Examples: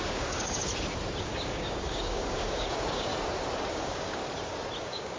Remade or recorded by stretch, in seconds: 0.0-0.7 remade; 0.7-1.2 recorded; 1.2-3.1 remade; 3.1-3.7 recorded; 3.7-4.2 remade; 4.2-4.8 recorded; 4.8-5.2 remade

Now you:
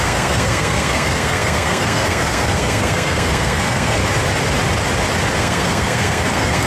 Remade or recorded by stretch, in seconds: 0.0-4.0 remade; 4.0-5.4 recorded; 5.4-6.7 remade

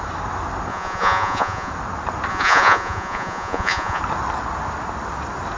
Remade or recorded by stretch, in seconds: 0.0-0.7 recorded; 0.7-1.7 remade; 1.7-2.3 recorded; 2.3-4.0 remade; 4.0-5.6 recorded

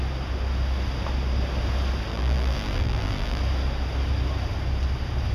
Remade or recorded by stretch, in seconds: 0.0-2.1 recorded; 2.1-3.4 remade; 3.4-5.3 recorded

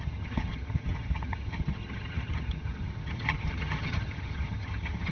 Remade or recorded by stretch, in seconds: 0.0-5.1 remade